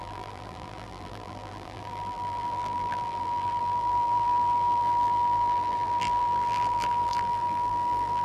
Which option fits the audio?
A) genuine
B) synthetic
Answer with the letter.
B